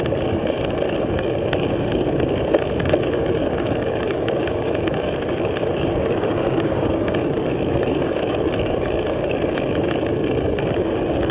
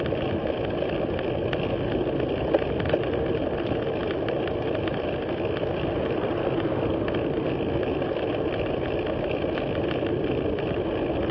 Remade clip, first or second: first